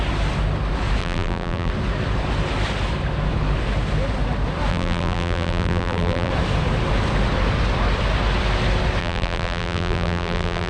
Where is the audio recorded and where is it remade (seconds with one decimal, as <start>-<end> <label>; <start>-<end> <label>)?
0.0-1.0 recorded; 1.0-1.7 remade; 1.7-4.7 recorded; 4.7-6.3 remade; 6.3-9.0 recorded; 9.0-10.7 remade